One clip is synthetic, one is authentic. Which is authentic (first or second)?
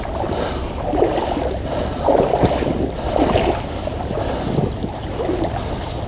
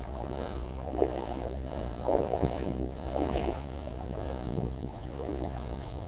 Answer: first